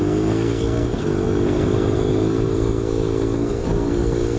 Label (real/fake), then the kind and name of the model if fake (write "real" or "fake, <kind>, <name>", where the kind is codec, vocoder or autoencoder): fake, codec, SNAC